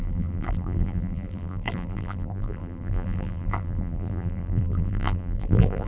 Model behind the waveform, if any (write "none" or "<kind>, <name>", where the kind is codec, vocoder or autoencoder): vocoder, BigVGAN v2